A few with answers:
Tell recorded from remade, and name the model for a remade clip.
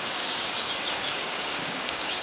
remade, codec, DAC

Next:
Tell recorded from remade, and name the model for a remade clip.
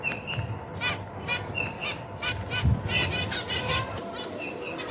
recorded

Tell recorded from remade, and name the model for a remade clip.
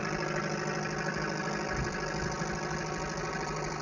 recorded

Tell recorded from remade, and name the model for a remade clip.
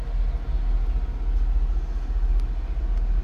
recorded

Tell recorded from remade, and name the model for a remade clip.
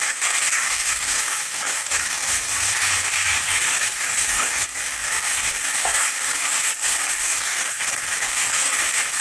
remade, codec, DAC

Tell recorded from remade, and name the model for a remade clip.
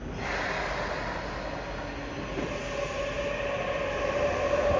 recorded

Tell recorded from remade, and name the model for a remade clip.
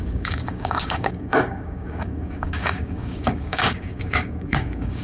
remade, codec, DAC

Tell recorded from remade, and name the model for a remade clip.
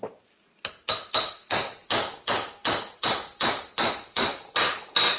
recorded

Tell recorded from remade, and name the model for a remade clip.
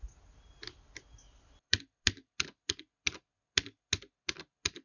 recorded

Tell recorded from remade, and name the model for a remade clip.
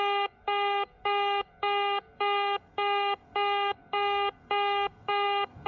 remade, codec, DAC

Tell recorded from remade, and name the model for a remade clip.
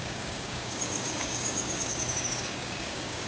remade, codec, DAC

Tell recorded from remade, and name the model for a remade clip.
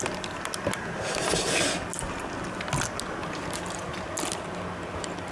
recorded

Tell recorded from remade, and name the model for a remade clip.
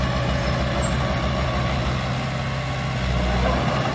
recorded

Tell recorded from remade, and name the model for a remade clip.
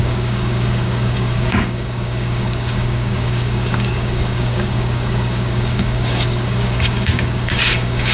remade, codec, DAC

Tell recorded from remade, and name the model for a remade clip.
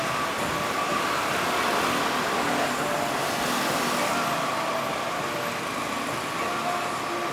recorded